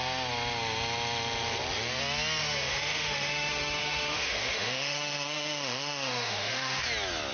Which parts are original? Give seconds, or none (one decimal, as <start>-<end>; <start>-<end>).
0.0-2.4; 6.8-7.3